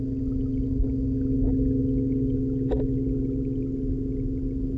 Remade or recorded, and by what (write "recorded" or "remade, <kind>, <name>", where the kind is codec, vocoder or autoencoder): recorded